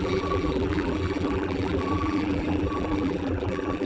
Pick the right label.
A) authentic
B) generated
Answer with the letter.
B